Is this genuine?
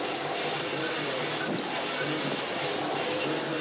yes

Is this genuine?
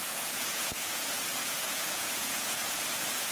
no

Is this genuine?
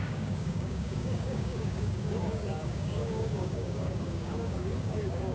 no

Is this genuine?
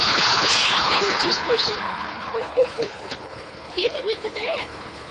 no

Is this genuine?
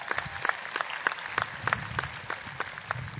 yes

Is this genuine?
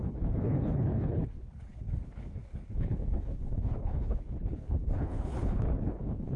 no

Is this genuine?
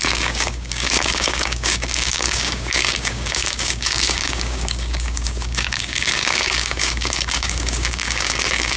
no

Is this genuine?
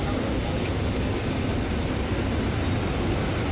yes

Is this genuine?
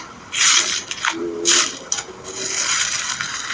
no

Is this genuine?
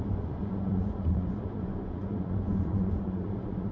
no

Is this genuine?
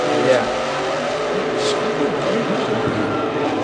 yes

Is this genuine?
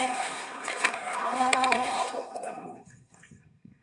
no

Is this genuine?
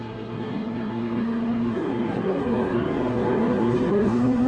no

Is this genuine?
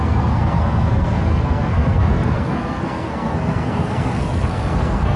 no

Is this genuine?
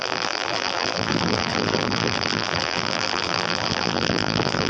no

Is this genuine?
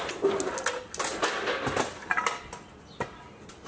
yes